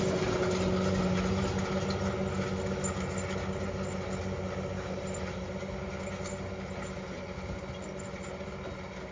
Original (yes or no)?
yes